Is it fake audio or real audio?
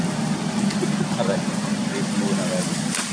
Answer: fake